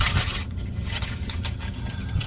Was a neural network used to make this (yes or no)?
yes